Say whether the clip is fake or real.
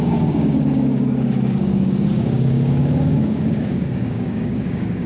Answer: fake